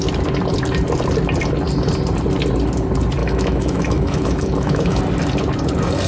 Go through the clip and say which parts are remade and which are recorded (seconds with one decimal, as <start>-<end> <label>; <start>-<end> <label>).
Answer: 0.0-3.2 recorded; 3.2-5.0 remade; 5.0-6.1 recorded